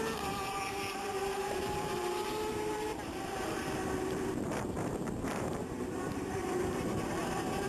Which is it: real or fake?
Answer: fake